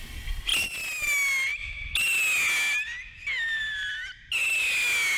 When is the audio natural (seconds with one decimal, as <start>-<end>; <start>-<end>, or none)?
0.0-5.2